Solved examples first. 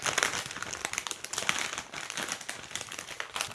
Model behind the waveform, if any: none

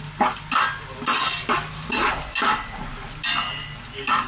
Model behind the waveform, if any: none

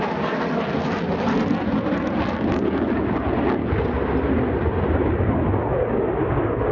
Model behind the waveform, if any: none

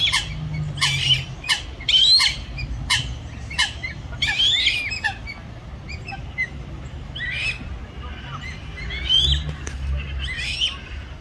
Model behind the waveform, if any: none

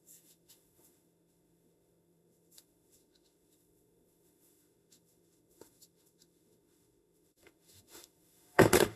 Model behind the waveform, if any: autoencoder, DAC-VAE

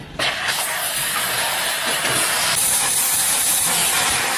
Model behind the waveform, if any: none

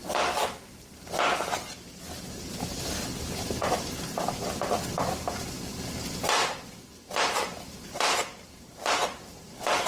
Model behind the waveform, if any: none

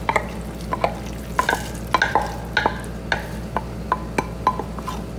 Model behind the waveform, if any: none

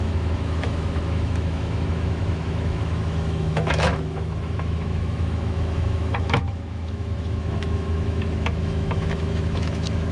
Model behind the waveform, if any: autoencoder, DAC-VAE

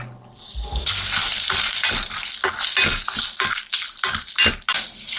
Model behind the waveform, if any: none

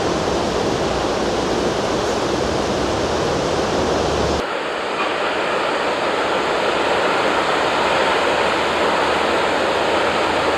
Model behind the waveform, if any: none